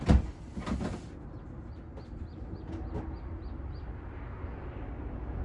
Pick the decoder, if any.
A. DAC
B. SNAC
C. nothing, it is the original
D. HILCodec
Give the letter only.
C